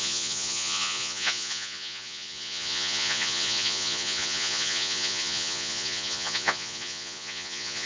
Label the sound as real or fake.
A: fake